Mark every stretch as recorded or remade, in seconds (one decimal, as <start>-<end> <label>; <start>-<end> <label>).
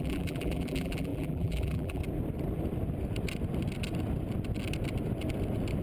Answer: 0.0-2.0 remade; 2.0-5.8 recorded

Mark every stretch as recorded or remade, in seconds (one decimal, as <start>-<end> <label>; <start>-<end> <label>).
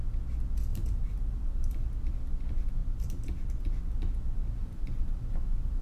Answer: 0.0-0.7 recorded; 0.7-1.8 remade; 1.8-4.6 recorded; 4.6-5.8 remade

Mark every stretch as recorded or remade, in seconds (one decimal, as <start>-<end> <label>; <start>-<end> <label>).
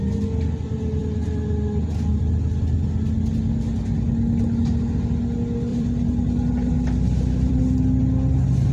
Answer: 0.0-5.7 recorded; 5.7-7.6 remade; 7.6-8.7 recorded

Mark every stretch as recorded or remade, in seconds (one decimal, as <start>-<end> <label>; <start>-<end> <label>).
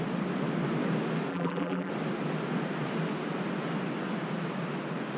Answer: 0.0-1.3 recorded; 1.3-1.9 remade; 1.9-5.2 recorded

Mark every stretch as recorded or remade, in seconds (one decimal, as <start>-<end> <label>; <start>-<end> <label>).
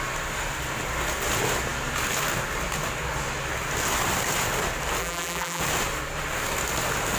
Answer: 0.0-5.0 recorded; 5.0-5.6 remade; 5.6-7.2 recorded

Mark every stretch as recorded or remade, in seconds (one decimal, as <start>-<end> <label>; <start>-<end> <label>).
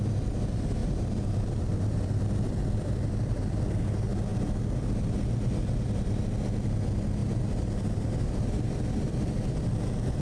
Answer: 0.0-0.8 recorded; 0.8-3.7 remade; 3.7-7.2 recorded; 7.2-10.2 remade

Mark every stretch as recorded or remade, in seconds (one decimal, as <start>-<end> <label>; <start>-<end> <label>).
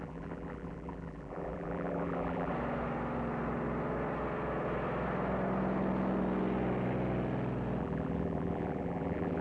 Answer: 0.0-2.5 remade; 2.5-7.8 recorded; 7.8-9.4 remade